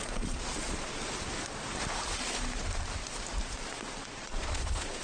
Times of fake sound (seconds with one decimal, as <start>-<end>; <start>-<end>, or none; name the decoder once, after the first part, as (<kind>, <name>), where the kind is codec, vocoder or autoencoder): 0.0-1.0 (vocoder, Vocos); 4.0-5.0